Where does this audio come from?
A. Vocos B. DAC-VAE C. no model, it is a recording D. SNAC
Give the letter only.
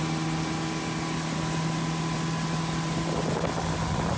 C